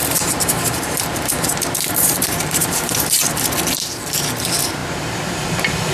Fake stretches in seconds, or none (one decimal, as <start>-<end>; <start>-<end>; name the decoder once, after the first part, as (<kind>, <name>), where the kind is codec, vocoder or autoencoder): 0.0-3.5 (vocoder, BigVGAN v2)